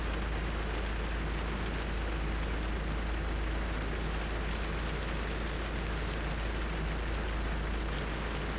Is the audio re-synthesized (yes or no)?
no